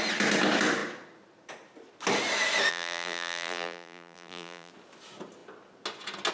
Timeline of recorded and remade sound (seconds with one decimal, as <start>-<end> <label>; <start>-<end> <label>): 0.0-2.7 recorded; 2.7-4.7 remade; 4.7-6.3 recorded

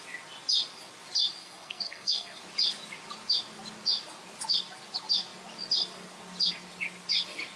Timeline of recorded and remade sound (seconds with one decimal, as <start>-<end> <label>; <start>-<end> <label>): 0.0-1.4 recorded; 1.4-2.4 remade; 2.4-7.6 recorded

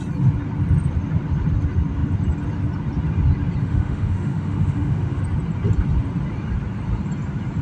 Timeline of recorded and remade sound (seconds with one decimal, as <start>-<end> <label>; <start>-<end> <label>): 0.0-3.6 recorded; 3.6-5.2 remade; 5.2-7.6 recorded

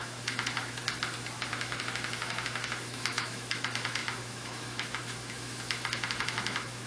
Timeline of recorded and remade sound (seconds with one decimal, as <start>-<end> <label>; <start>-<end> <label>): 0.0-0.8 remade; 0.8-1.5 recorded; 1.5-6.9 remade

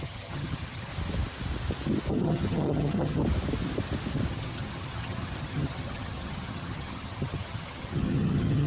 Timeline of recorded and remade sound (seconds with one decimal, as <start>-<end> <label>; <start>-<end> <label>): 0.0-0.9 remade; 0.9-2.1 recorded; 2.1-3.2 remade; 3.2-4.3 recorded; 4.3-8.7 remade

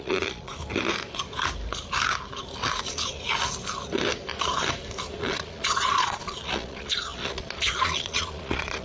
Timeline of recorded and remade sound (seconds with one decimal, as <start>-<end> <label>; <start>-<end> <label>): 0.0-0.6 remade; 0.6-5.2 recorded; 5.2-8.8 remade

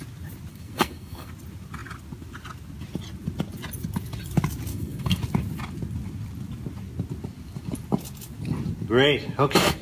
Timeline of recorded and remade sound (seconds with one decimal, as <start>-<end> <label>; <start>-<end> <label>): 0.0-0.5 recorded; 0.5-1.3 remade; 1.3-4.7 recorded; 4.7-5.2 remade; 5.2-9.8 recorded

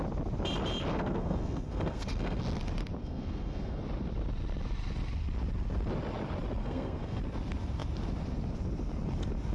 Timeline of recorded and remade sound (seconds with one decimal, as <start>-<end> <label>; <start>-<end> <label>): 0.0-0.9 recorded; 0.9-2.4 remade; 2.4-3.0 recorded; 3.0-3.8 remade; 3.8-6.6 recorded; 6.6-7.2 remade; 7.2-9.5 recorded